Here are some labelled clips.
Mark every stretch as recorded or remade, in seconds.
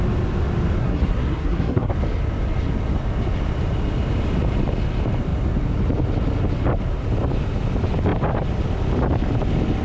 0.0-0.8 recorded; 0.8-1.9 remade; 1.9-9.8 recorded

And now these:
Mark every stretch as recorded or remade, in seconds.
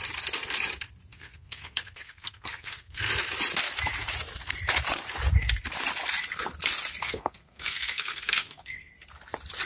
0.0-1.1 recorded; 1.1-3.1 remade; 3.1-7.0 recorded; 7.0-8.9 remade; 8.9-9.7 recorded